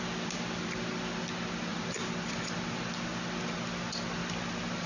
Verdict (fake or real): real